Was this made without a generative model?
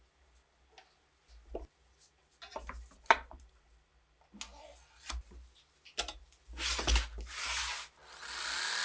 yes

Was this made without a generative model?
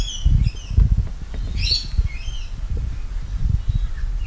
yes